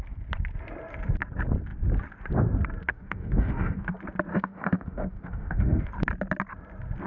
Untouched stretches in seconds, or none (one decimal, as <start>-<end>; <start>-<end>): 0.0-2.9; 3.9-4.3; 5.9-7.1